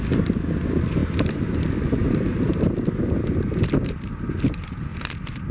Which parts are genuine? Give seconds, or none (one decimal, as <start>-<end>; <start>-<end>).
0.0-5.5